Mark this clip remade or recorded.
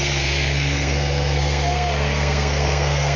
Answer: remade